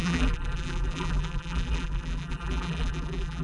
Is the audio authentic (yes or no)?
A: no